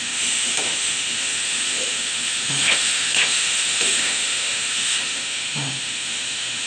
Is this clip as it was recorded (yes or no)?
no